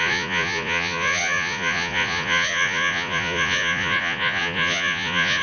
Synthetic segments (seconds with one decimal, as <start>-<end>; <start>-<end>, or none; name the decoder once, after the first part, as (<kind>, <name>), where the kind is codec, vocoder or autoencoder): 0.0-5.4 (vocoder, Vocos)